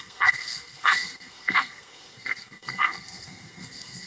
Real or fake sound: fake